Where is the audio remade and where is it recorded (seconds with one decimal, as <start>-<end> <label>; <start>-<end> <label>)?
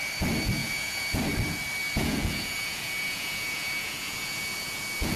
0.0-0.6 recorded; 0.6-1.2 remade; 1.2-1.8 recorded; 1.8-5.2 remade